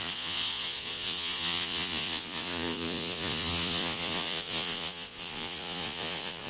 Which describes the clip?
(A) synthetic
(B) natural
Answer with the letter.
A